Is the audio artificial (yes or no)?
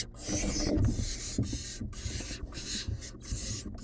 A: no